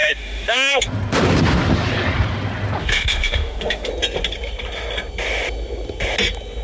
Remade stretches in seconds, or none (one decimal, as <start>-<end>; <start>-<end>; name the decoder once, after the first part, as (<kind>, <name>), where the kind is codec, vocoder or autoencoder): 0.0-0.8 (autoencoder, DAC-VAE); 2.8-3.9